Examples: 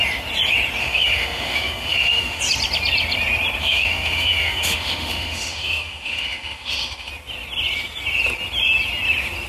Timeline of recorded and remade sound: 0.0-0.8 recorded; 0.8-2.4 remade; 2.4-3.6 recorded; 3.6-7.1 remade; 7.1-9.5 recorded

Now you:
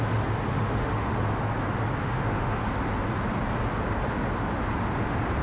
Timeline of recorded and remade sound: 0.0-0.5 recorded; 0.5-1.1 remade; 1.1-2.0 recorded; 2.0-2.6 remade; 2.6-5.4 recorded